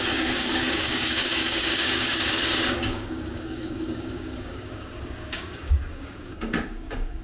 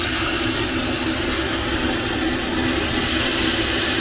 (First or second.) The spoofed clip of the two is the first